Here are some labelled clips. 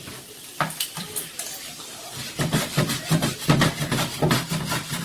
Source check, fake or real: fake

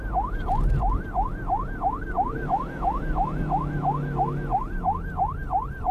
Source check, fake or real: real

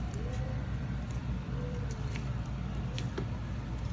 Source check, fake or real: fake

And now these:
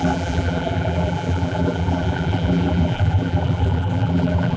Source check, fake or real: fake